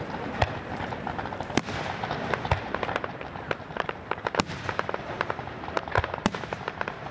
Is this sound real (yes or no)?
no